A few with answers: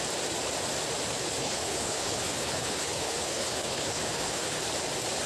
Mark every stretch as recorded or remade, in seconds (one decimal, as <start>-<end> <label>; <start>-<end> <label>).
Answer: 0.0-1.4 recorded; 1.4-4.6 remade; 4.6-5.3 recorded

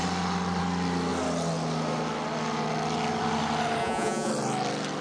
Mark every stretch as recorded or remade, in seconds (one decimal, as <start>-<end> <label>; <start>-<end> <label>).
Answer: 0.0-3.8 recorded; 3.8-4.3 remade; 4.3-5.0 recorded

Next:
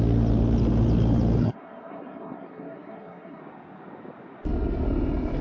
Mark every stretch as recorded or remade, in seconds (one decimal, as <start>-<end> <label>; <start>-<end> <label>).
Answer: 0.0-1.4 recorded; 1.4-3.4 remade; 3.4-5.4 recorded

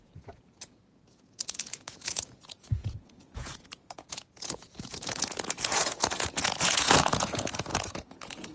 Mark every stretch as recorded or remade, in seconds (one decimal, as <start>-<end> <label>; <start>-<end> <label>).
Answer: 0.0-8.5 remade

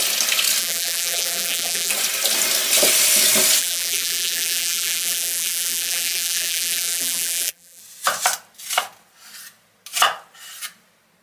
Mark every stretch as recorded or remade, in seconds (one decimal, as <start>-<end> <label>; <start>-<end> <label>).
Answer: 0.0-0.6 recorded; 0.6-1.9 remade; 1.9-3.6 recorded; 3.6-7.8 remade; 7.8-11.2 recorded

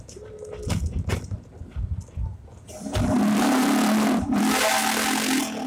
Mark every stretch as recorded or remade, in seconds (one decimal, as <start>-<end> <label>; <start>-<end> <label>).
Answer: 0.0-1.1 recorded; 1.1-4.5 remade; 4.5-5.7 recorded